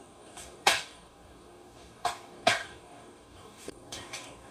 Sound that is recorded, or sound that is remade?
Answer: remade